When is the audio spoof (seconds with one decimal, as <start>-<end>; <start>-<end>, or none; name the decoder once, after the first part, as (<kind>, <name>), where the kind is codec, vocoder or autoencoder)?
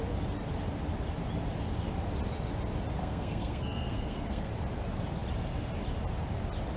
3.0-4.5 (codec, SNAC)